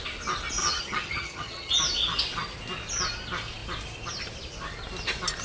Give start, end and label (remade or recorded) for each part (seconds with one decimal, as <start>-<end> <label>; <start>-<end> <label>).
0.0-0.6 recorded; 0.6-1.7 remade; 1.7-5.4 recorded